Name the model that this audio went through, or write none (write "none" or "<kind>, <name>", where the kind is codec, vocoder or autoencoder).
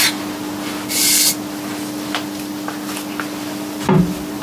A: none